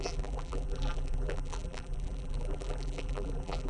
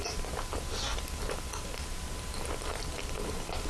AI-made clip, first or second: first